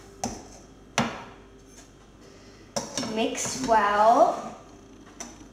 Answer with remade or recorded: recorded